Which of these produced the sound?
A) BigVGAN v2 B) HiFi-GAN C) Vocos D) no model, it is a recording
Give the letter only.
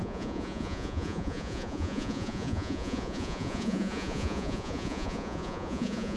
C